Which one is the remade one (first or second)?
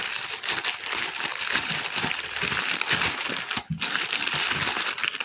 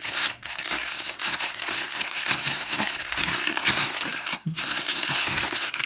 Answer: second